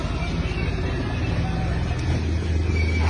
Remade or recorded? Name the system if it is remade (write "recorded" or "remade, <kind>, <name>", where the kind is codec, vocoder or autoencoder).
recorded